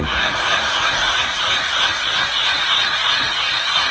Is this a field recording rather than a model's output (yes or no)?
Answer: no